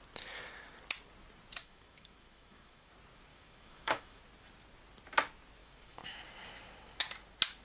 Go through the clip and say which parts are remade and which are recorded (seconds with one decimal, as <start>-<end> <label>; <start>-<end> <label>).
0.0-1.6 recorded; 1.6-2.9 remade; 2.9-3.3 recorded; 3.3-4.2 remade; 4.2-5.6 recorded; 5.6-6.2 remade; 6.2-7.6 recorded